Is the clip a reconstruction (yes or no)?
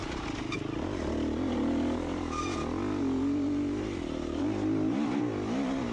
no